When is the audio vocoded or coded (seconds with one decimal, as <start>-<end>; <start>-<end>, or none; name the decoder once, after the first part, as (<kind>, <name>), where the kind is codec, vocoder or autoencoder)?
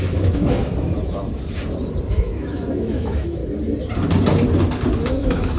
0.0-0.6 (autoencoder, DAC-VAE); 2.1-3.4; 5.1-5.6